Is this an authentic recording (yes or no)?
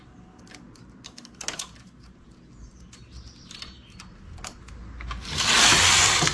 yes